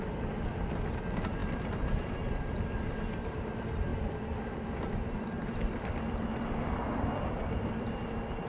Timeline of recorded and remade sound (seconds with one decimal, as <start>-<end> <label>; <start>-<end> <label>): 0.0-8.5 recorded